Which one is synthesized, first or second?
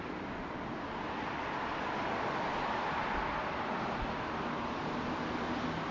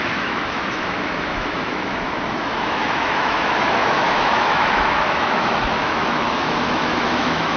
second